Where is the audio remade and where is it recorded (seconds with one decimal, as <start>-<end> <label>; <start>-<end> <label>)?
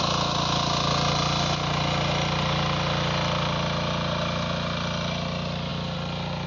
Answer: 0.0-6.5 recorded